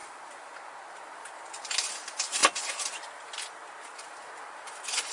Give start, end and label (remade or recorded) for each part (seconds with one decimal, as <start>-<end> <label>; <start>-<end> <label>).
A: 0.0-5.1 recorded